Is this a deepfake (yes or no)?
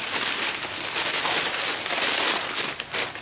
no